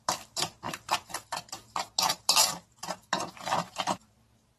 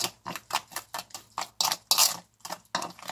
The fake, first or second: first